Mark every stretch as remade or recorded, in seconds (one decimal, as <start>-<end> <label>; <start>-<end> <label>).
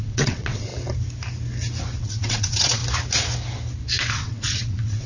0.0-0.7 remade; 0.7-2.0 recorded; 2.0-2.8 remade; 2.8-4.1 recorded; 4.1-5.1 remade